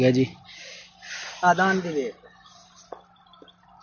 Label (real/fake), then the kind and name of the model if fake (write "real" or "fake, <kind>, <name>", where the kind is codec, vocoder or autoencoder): real